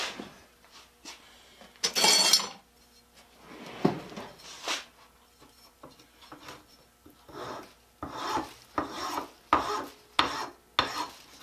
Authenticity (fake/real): real